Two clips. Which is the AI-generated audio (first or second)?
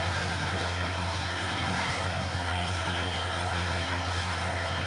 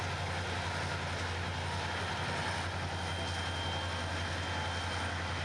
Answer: first